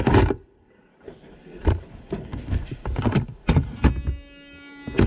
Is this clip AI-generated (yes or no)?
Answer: no